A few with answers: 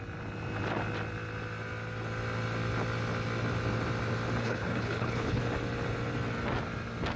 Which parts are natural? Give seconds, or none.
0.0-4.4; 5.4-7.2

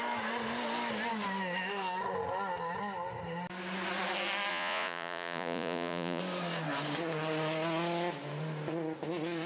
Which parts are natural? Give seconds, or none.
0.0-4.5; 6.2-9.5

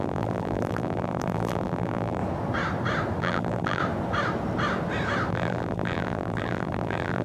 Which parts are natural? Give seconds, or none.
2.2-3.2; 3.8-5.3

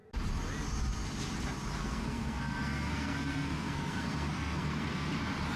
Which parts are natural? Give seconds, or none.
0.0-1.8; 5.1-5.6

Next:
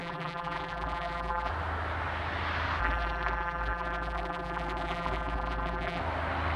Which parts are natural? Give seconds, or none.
1.5-2.8; 6.0-6.6

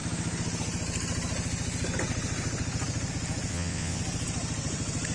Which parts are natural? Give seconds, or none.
0.0-3.5; 4.0-5.1

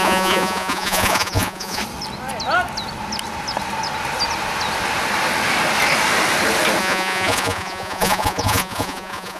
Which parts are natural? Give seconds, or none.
1.8-6.8

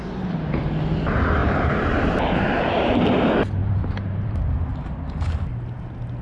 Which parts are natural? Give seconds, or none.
0.0-1.4; 3.0-3.6; 4.6-6.2